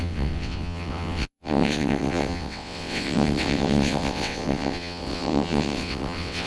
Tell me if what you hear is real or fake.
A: fake